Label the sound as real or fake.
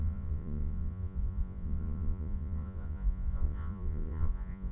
fake